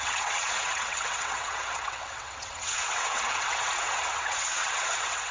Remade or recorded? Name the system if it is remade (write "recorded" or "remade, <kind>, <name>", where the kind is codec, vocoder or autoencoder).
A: remade, vocoder, WaveNeXt